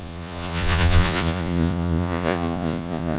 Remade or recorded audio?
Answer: remade